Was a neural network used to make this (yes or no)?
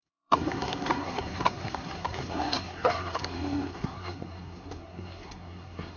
yes